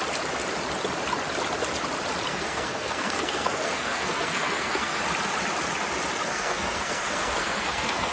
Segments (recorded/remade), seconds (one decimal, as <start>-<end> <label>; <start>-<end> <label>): 0.0-2.3 recorded; 2.3-5.0 remade; 5.0-6.3 recorded; 6.3-8.1 remade